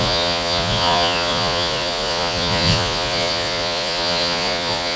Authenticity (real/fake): fake